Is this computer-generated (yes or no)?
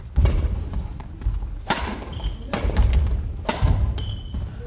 no